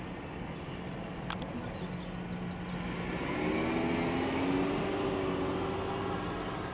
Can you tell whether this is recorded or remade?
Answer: recorded